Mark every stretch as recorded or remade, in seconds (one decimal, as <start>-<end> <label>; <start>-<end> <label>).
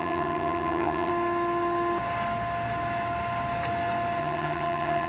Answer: 0.0-1.1 remade; 1.1-4.2 recorded; 4.2-5.1 remade